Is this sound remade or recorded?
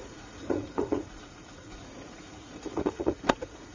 remade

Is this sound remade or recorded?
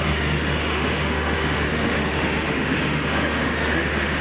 remade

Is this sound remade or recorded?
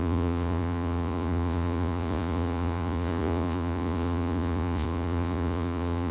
remade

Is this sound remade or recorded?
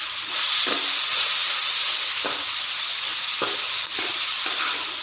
recorded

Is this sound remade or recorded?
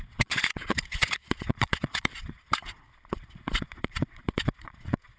remade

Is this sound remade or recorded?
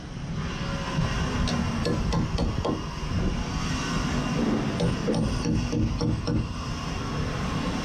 recorded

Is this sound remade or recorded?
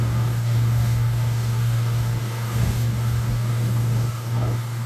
remade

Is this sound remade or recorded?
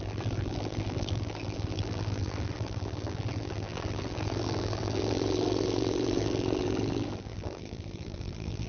remade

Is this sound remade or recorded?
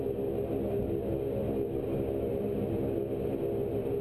recorded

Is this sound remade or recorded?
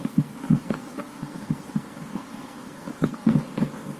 remade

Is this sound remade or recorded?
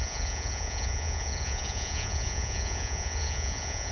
remade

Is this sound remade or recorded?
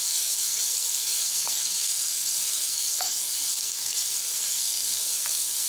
remade